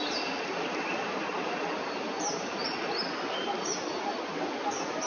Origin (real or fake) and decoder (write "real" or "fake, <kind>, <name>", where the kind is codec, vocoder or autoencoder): fake, vocoder, BigVGAN v2